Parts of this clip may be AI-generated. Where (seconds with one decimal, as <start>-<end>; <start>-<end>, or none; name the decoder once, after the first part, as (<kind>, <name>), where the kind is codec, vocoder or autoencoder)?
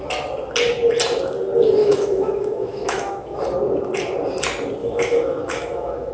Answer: 1.8-3.4 (autoencoder, DAC-VAE); 4.8-6.1